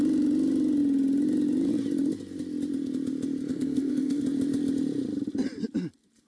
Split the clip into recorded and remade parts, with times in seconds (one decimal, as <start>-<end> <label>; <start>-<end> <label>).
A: 0.0-3.5 recorded; 3.5-4.2 remade; 4.2-6.3 recorded